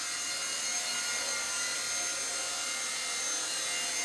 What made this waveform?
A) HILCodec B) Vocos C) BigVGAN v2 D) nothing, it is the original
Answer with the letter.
D